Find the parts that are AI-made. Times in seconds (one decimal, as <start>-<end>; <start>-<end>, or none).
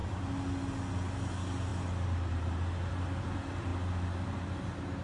none